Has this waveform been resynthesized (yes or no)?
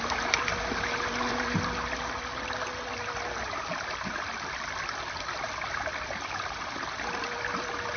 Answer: no